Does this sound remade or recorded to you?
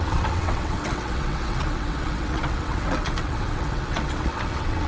remade